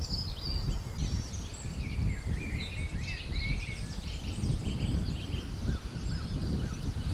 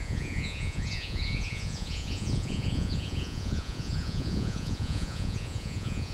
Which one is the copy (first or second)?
second